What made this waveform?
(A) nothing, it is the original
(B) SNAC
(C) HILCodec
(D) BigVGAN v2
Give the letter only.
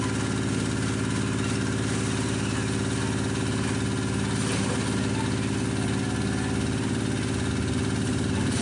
A